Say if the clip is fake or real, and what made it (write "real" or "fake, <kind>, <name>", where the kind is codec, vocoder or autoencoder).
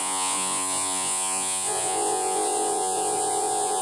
fake, vocoder, Vocos